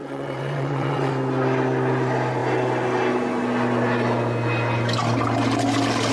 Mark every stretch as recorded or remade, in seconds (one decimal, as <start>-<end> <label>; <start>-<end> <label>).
0.0-1.1 remade; 1.1-6.1 recorded